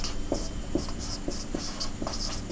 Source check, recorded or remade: recorded